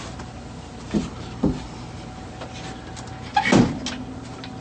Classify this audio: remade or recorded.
recorded